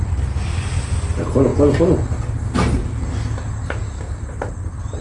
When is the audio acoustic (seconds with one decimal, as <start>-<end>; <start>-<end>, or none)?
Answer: 0.0-5.0